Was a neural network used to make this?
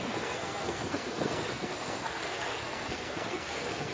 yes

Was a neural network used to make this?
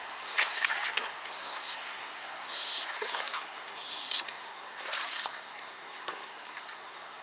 yes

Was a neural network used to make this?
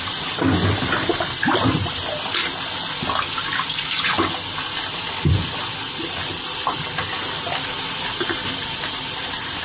no